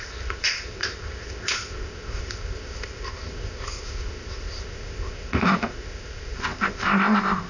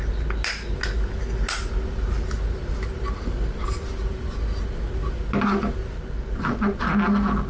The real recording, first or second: second